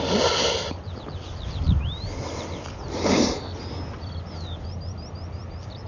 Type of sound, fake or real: real